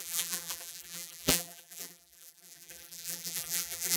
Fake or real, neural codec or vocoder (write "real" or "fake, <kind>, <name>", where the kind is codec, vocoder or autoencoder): fake, vocoder, BigVGAN v2